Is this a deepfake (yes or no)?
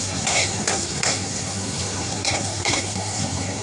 yes